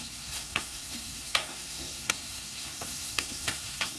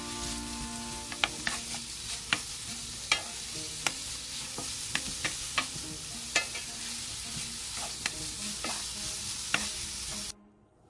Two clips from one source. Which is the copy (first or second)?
first